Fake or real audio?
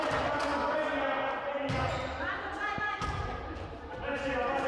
real